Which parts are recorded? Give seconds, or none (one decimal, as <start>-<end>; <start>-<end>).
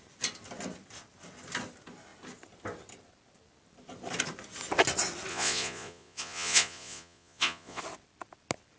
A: 0.0-5.3; 7.8-8.8